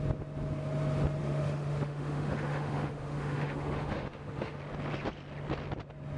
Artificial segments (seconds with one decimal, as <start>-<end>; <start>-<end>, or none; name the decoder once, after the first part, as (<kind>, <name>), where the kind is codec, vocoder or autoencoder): 1.2-4.6 (autoencoder, DAC-VAE)